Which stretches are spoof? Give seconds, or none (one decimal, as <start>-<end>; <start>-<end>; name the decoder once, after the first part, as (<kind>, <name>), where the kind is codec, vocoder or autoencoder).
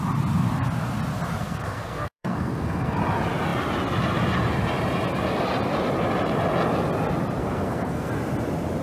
1.4-3.0 (codec, SNAC); 7.4-8.1